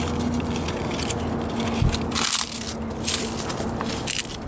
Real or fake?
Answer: real